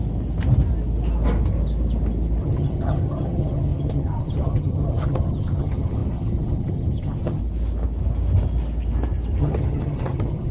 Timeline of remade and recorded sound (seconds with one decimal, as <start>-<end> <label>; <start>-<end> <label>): 0.0-2.4 recorded; 2.4-7.4 remade; 7.4-9.4 recorded; 9.4-10.5 remade